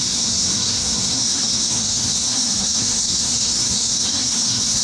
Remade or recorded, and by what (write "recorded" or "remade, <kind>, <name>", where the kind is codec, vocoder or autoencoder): remade, codec, SNAC